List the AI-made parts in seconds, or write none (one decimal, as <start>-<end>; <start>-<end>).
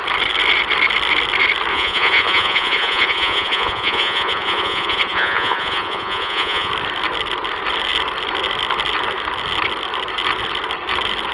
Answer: 1.7-6.7